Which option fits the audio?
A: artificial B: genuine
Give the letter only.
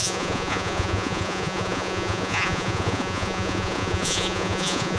A